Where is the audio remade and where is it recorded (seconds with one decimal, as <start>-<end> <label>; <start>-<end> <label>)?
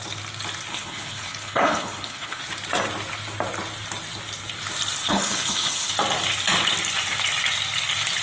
0.0-0.7 recorded; 0.7-2.4 remade; 2.4-5.0 recorded; 5.0-5.9 remade; 5.9-8.2 recorded